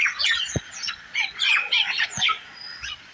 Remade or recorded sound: remade